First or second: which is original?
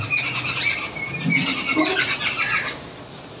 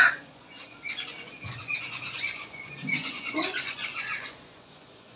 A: first